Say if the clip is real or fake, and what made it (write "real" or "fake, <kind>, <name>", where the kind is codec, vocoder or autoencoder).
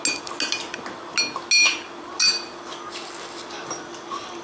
real